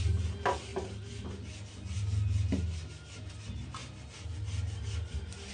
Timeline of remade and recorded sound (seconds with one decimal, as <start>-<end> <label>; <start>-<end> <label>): 0.0-5.5 recorded